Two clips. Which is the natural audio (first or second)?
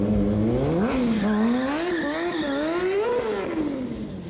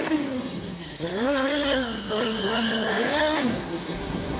first